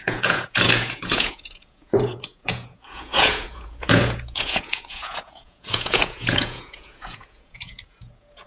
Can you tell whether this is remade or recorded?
remade